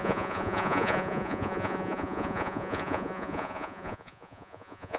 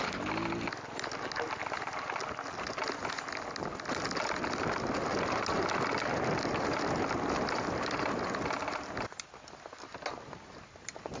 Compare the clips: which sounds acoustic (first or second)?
second